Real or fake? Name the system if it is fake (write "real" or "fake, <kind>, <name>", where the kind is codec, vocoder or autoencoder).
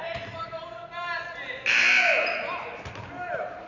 real